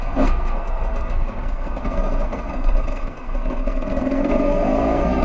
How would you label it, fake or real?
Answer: fake